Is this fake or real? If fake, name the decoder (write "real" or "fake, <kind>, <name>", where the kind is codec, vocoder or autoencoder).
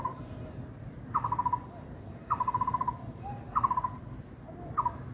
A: real